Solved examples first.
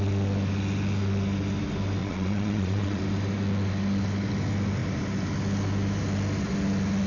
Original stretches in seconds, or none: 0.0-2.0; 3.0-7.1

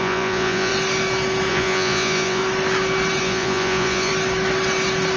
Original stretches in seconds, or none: 0.7-1.5; 2.4-3.2; 4.1-5.2

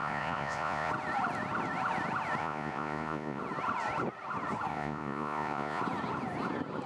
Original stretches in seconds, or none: 0.9-2.4; 3.4-4.7; 5.8-6.9

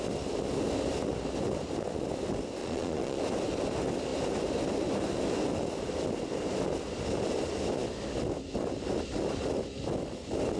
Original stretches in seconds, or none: 0.0-2.6; 3.2-10.6

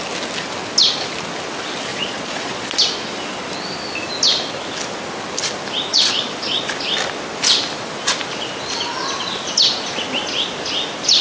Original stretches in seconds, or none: 0.0-1.9; 2.8-5.9; 6.6-11.2